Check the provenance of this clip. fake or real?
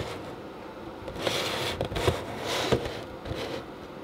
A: real